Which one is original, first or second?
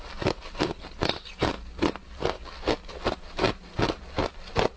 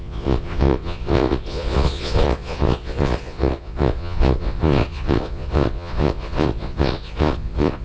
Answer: first